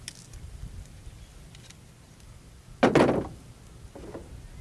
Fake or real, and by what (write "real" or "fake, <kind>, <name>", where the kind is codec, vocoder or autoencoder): real